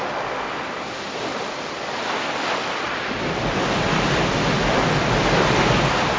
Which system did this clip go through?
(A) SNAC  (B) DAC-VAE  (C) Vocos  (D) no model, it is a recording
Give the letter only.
D